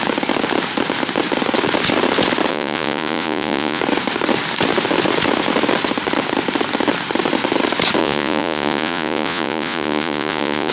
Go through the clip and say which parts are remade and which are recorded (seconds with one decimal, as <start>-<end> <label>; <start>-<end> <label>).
0.0-2.5 recorded; 2.5-3.8 remade; 3.8-8.0 recorded; 8.0-10.7 remade